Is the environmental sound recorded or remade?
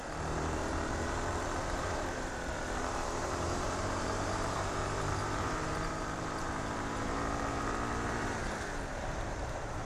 remade